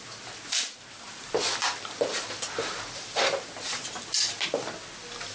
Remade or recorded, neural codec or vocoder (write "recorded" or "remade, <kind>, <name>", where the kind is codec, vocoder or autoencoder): recorded